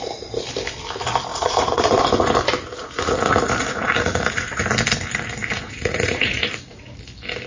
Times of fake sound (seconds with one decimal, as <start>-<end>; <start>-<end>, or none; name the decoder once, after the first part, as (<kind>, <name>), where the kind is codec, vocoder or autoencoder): 1.3-2.0 (vocoder, Vocos); 2.8-4.6; 5.4-6.9